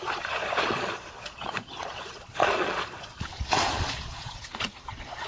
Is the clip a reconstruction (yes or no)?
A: yes